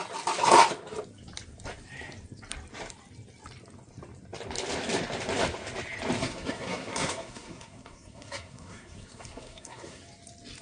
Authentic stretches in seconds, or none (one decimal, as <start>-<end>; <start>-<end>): 0.0-6.2; 10.0-10.6

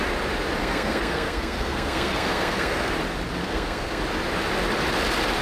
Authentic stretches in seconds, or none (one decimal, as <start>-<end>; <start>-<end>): 0.0-0.6; 2.9-3.4; 4.0-5.4

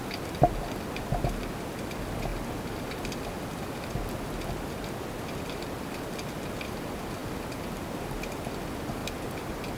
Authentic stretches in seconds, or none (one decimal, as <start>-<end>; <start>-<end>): 0.0-9.8

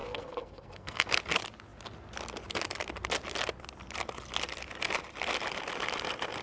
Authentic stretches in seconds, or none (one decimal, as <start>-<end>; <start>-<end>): 1.1-6.4

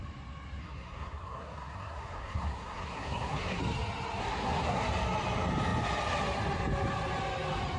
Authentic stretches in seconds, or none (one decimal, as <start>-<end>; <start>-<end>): 0.0-0.6; 3.6-4.2; 4.8-7.8

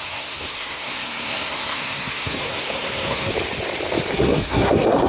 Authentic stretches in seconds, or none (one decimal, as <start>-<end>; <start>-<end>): 3.3-4.1